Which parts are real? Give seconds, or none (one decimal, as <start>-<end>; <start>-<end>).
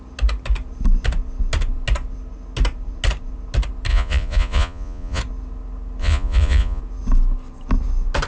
0.0-3.9; 5.2-6.0; 6.8-8.3